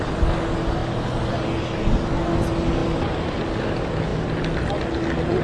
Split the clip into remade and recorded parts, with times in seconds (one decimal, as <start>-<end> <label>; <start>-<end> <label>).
0.0-5.4 recorded